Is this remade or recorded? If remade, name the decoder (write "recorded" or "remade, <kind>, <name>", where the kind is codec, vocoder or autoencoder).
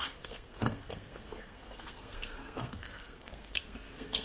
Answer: remade, codec, SNAC